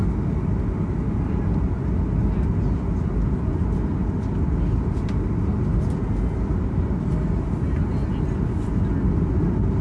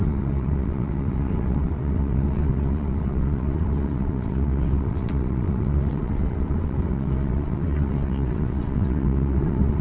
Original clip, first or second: first